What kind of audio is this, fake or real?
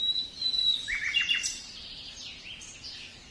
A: real